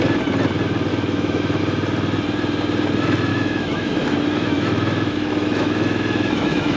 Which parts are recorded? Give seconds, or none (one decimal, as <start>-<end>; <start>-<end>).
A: 0.0-0.9; 1.6-3.3